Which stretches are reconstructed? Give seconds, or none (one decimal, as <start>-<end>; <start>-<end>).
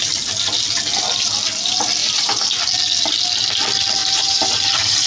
2.0-2.6; 4.0-5.1